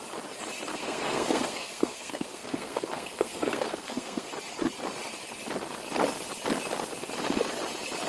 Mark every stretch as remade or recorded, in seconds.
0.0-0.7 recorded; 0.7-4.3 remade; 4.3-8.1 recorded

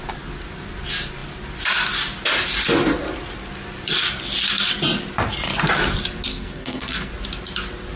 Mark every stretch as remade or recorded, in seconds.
0.0-6.3 recorded; 6.3-7.1 remade; 7.1-8.0 recorded

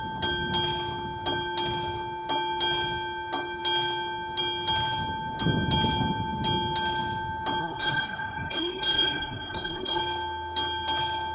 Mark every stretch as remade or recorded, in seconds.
0.0-7.6 recorded; 7.6-10.0 remade; 10.0-11.3 recorded

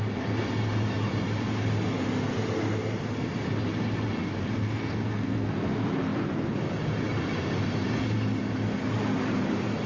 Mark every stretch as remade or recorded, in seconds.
0.0-4.6 recorded; 4.6-5.5 remade; 5.5-9.9 recorded

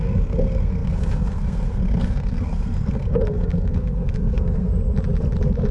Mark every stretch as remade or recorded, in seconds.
0.0-4.7 remade; 4.7-5.7 recorded

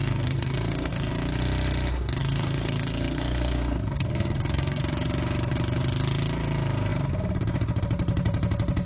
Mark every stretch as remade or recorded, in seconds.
0.0-1.1 remade; 1.1-2.2 recorded; 2.2-4.8 remade; 4.8-8.8 recorded